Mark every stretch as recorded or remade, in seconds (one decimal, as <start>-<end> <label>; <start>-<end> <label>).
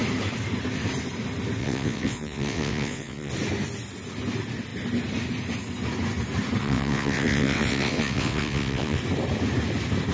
0.0-1.6 recorded; 1.6-3.3 remade; 3.3-6.6 recorded; 6.6-9.0 remade; 9.0-10.1 recorded